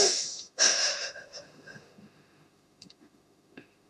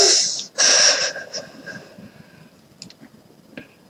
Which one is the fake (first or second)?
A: first